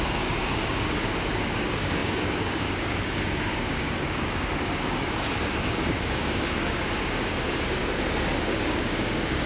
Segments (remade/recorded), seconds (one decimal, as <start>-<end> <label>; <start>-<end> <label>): 0.0-9.5 remade